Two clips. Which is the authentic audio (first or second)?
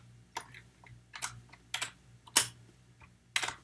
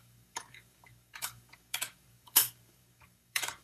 first